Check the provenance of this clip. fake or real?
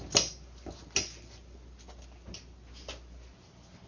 real